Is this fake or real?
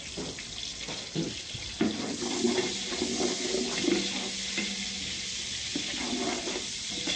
real